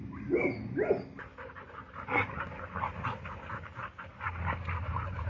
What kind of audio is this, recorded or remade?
recorded